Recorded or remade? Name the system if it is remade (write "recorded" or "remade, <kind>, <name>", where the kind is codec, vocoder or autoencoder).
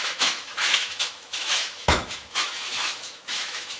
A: remade, autoencoder, DAC-VAE